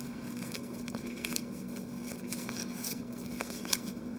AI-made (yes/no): yes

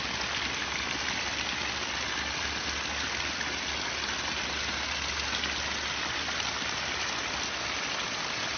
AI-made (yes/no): no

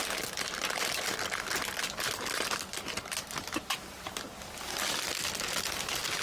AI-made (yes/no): no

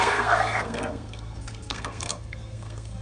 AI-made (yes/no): yes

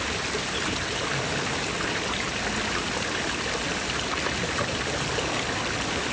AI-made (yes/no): no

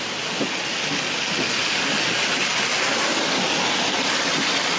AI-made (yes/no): no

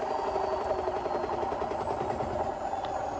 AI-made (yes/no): no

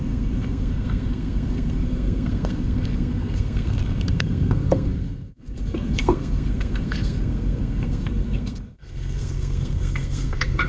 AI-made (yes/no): yes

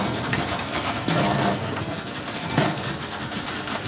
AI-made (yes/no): yes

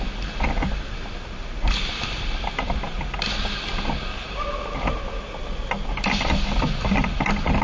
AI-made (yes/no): no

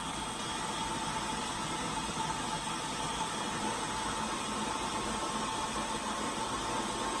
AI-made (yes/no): no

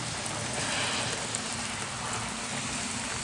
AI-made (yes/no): no